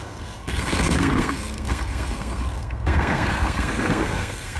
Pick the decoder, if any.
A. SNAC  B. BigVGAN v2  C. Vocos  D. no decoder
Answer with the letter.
A